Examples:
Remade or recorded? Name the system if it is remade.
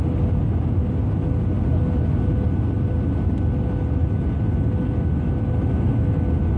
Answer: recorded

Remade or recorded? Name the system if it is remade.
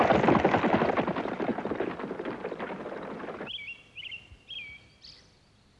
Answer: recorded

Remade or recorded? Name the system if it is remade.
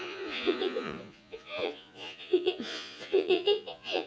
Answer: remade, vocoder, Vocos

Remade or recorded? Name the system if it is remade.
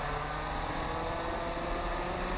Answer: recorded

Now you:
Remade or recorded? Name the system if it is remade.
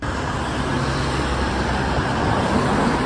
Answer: recorded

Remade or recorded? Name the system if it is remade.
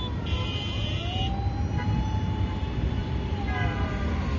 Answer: recorded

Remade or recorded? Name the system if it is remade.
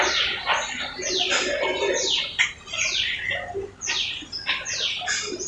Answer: recorded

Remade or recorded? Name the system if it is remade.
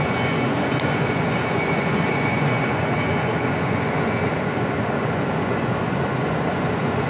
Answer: remade, vocoder, Vocos